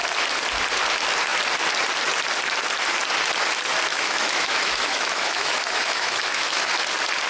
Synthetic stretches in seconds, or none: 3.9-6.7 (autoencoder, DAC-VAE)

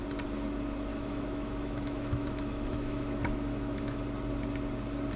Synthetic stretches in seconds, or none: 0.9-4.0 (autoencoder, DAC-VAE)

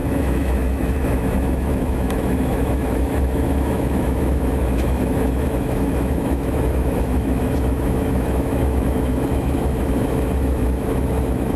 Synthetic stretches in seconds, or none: 0.0-11.6 (autoencoder, DAC-VAE)

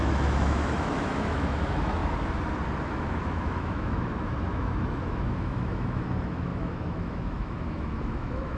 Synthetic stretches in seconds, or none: 0.0-2.0 (autoencoder, DAC-VAE); 2.8-8.6

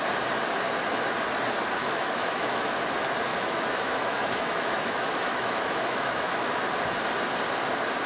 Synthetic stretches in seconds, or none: 1.8-2.8 (autoencoder, DAC-VAE); 3.3-6.5

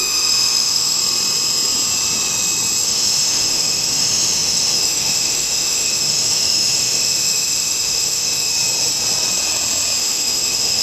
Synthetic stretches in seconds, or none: 0.0-1.0 (autoencoder, DAC-VAE); 2.8-8.5; 10.0-10.8